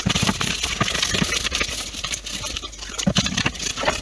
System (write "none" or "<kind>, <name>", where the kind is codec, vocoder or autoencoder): vocoder, BigVGAN v2